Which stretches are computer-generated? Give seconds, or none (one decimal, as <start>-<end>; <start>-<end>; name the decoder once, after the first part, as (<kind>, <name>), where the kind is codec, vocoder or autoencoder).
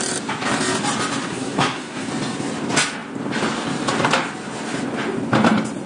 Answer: 1.2-2.1 (codec, SNAC)